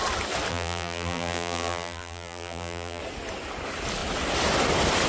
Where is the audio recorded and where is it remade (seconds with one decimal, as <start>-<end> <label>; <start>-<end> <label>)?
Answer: 0.0-0.5 recorded; 0.5-3.0 remade; 3.0-5.1 recorded